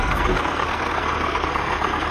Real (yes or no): no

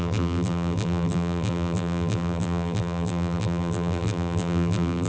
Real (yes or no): no